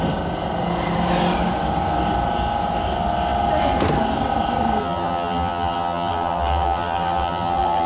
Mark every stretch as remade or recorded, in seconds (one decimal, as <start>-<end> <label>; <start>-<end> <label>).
0.0-4.8 recorded; 4.8-7.9 remade